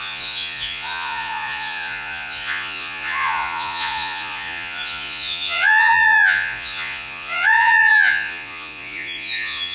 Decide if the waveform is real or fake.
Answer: fake